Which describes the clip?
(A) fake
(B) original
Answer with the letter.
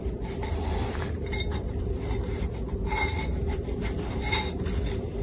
B